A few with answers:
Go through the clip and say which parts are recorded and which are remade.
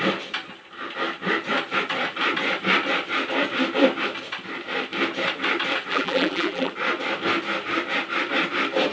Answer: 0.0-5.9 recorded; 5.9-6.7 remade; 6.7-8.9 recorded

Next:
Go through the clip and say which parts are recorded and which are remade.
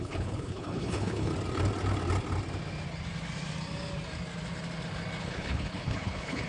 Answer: 0.0-1.3 remade; 1.3-5.2 recorded; 5.2-6.5 remade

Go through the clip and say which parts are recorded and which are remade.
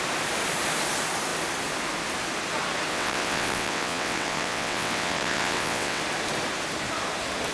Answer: 0.0-2.9 recorded; 2.9-6.0 remade; 6.0-7.5 recorded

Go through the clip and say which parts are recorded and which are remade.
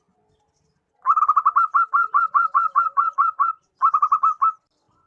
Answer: 0.0-2.0 recorded; 2.0-3.7 remade; 3.7-5.1 recorded